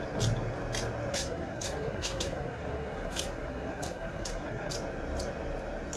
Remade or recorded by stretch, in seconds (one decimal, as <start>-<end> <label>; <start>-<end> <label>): 0.0-1.1 recorded; 1.1-4.7 remade; 4.7-6.0 recorded